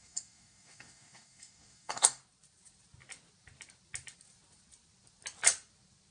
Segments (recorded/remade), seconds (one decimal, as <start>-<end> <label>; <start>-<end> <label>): 0.0-2.2 remade; 2.2-6.1 recorded